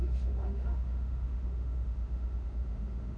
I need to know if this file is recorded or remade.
remade